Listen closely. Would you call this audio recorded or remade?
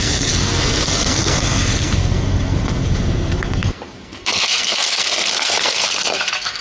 remade